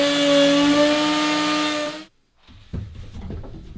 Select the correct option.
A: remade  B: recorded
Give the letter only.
B